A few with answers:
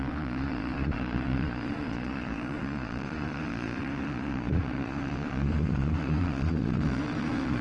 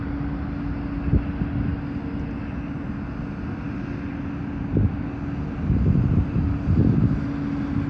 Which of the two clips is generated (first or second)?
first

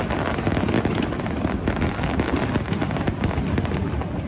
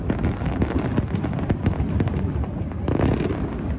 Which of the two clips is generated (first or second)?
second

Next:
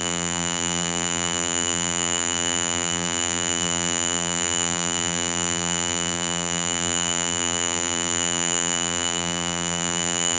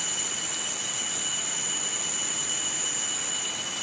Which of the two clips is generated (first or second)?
first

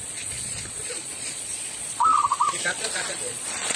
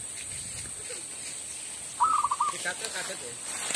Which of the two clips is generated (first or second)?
first